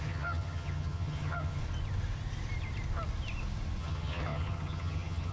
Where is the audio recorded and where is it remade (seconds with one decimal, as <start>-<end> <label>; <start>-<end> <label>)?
0.0-1.6 remade; 1.6-3.8 recorded; 3.8-5.3 remade